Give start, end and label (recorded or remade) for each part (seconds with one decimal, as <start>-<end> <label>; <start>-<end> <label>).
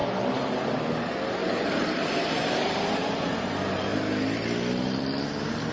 0.0-1.4 recorded; 1.4-3.5 remade; 3.5-5.7 recorded